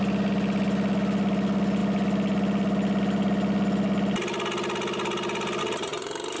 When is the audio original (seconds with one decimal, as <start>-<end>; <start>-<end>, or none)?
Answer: 0.0-6.4